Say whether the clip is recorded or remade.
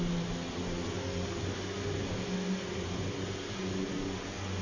recorded